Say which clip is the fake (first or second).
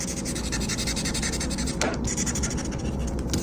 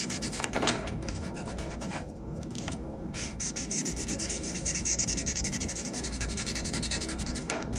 second